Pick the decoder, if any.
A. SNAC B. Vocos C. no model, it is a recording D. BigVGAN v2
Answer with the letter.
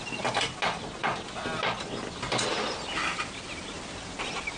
C